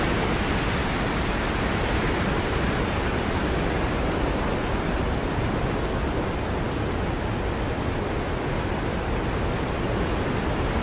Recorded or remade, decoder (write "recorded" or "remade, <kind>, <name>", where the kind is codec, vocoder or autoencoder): recorded